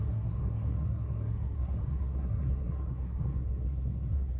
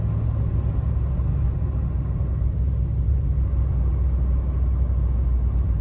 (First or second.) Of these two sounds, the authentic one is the second